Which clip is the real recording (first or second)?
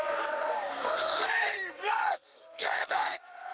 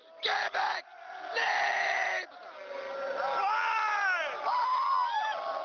second